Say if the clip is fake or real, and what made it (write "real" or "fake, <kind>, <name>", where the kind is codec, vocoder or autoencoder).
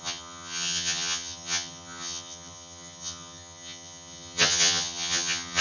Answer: fake, vocoder, HiFi-GAN